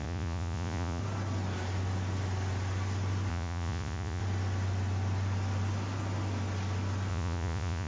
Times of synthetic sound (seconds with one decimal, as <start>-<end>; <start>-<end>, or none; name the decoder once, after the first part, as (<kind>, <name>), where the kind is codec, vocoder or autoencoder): 0.0-1.0 (vocoder, Vocos); 3.3-4.2; 7.1-7.9